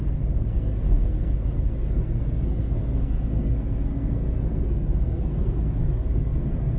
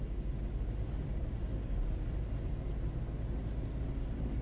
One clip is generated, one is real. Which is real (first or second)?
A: second